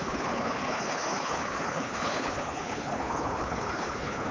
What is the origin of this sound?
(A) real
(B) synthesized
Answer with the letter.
B